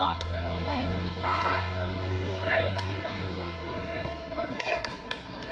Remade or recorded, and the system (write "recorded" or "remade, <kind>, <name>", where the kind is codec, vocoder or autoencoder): remade, codec, SNAC